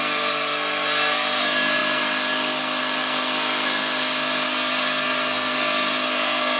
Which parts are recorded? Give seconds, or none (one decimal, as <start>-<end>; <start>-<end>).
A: none